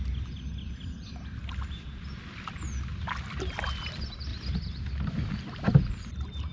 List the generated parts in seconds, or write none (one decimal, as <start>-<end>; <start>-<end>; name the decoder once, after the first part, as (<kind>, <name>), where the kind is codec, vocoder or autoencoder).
2.9-3.4 (vocoder, BigVGAN v2); 4.3-5.6